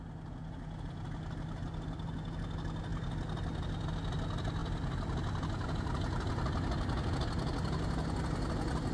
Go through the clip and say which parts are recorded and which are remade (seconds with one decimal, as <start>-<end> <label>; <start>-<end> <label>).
0.0-8.9 recorded